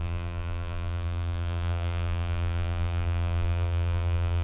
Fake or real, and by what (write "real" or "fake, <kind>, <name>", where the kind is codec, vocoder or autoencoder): fake, vocoder, BigVGAN v2